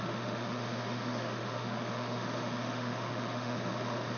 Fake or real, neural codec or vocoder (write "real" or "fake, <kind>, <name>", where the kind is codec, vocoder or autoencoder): fake, autoencoder, DAC-VAE